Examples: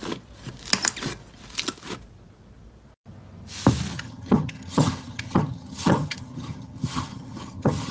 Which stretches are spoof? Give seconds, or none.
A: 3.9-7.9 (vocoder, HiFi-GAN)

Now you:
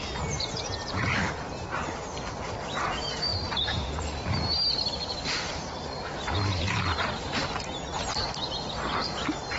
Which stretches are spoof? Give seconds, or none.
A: 3.3-3.8 (vocoder, BigVGAN v2); 5.0-7.3